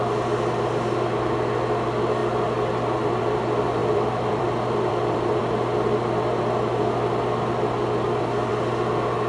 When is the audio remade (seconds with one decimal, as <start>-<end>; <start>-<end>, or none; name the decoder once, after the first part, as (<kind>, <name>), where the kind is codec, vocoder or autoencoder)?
3.8-5.4 (vocoder, BigVGAN v2)